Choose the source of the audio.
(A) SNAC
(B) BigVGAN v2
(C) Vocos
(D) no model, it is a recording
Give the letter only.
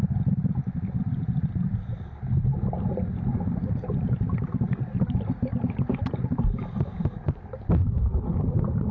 D